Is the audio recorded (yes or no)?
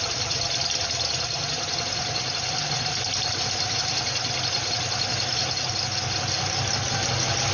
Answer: yes